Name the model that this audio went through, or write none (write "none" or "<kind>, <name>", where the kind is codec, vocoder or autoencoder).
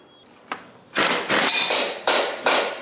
none